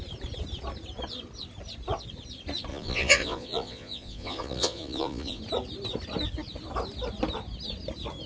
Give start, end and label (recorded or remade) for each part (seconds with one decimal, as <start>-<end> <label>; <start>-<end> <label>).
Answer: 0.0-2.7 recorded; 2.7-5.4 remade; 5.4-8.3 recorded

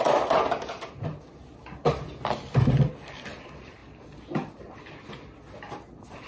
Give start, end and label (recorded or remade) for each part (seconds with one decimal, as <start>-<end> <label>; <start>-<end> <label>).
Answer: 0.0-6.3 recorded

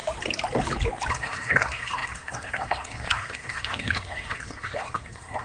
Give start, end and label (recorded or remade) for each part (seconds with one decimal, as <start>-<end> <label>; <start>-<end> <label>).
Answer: 0.0-1.1 recorded; 1.1-5.4 remade

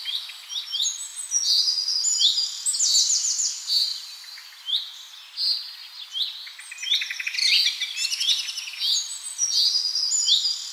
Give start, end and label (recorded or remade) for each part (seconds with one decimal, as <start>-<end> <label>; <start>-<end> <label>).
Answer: 0.0-10.7 recorded